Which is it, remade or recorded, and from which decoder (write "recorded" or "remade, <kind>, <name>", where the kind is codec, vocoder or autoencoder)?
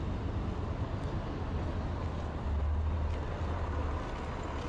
recorded